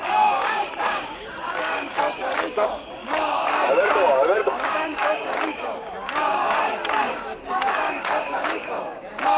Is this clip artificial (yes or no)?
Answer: yes